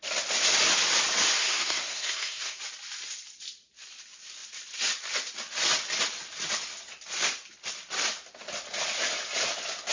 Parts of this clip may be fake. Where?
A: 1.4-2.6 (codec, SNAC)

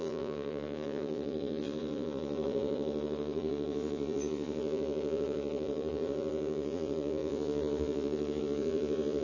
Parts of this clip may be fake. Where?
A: 0.0-9.2 (vocoder, Vocos)

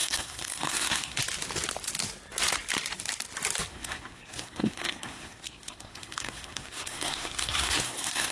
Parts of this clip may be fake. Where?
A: 0.0-1.2 (codec, SNAC); 3.7-8.3

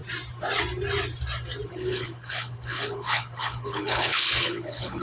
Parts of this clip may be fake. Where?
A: 1.7-5.0 (codec, HILCodec)

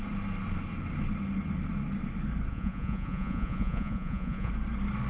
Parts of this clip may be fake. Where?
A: 2.5-4.5 (vocoder, Vocos)

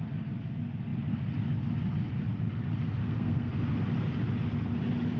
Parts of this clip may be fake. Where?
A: 3.0-3.5 (codec, SNAC)

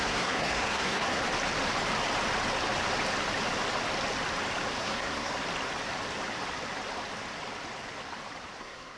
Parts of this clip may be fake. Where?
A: 0.0-1.2 (codec, SNAC); 4.8-5.3; 8.6-9.0

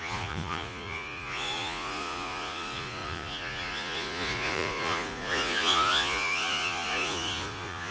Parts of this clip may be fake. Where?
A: 0.0-7.9 (vocoder, Vocos)